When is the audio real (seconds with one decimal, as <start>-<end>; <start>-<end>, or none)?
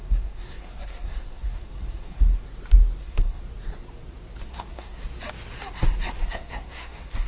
2.4-3.0; 3.4-4.4; 5.0-6.2